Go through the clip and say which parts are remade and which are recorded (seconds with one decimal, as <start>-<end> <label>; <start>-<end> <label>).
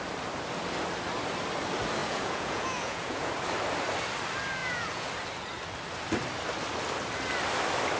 0.0-2.0 recorded; 2.0-3.3 remade; 3.3-4.6 recorded; 4.6-5.1 remade; 5.1-8.0 recorded